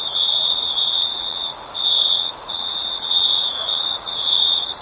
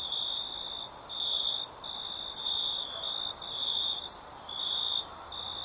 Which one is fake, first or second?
first